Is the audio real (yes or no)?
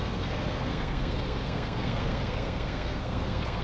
no